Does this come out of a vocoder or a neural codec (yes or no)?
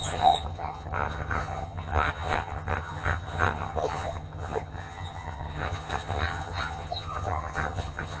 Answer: yes